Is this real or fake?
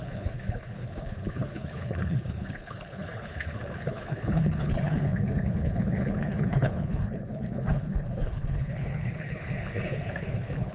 fake